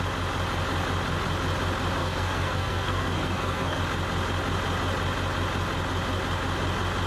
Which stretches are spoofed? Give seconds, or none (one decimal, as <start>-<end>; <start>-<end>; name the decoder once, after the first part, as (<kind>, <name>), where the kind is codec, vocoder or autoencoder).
2.0-3.8 (codec, SNAC)